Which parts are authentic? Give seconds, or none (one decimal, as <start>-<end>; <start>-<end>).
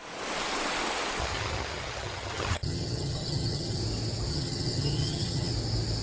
0.0-1.2; 3.8-4.3; 5.5-6.0